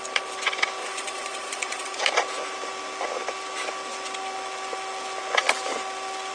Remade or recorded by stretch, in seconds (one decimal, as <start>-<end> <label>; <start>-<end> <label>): 0.0-0.8 recorded; 0.8-2.0 remade; 2.0-6.3 recorded